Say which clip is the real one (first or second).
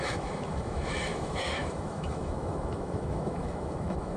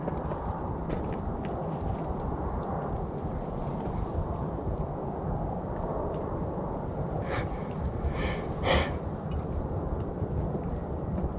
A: second